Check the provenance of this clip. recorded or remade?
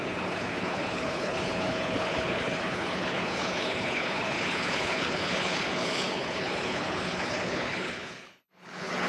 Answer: remade